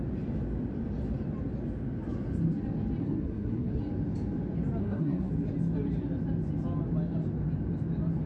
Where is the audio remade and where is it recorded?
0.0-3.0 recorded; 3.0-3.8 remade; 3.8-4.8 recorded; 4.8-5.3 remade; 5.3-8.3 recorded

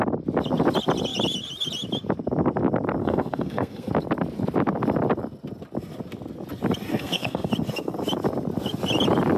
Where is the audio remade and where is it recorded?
0.0-3.0 recorded; 3.0-3.9 remade; 3.9-6.9 recorded; 6.9-7.5 remade; 7.5-9.4 recorded

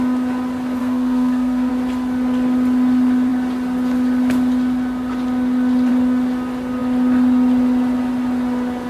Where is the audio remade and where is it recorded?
0.0-0.8 recorded; 0.8-1.7 remade; 1.7-8.9 recorded

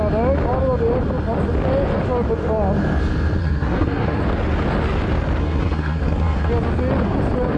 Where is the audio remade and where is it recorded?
0.0-3.4 recorded; 3.4-4.2 remade; 4.2-5.4 recorded; 5.4-6.5 remade; 6.5-7.6 recorded

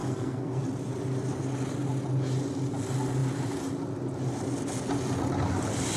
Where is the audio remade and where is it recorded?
0.0-0.6 remade; 0.6-6.0 recorded

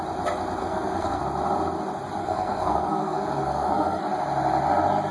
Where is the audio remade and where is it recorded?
0.0-0.6 recorded; 0.6-1.2 remade; 1.2-2.2 recorded; 2.2-4.0 remade; 4.0-5.1 recorded

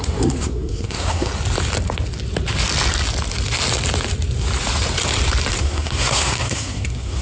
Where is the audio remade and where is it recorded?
0.0-1.3 remade; 1.3-5.6 recorded; 5.6-7.2 remade